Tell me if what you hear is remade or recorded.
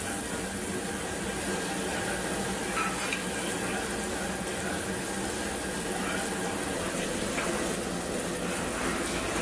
recorded